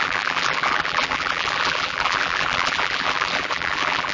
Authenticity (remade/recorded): remade